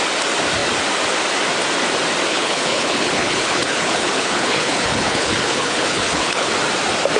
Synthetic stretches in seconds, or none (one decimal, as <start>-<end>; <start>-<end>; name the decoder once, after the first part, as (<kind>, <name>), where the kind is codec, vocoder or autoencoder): 2.3-6.5 (codec, HILCodec)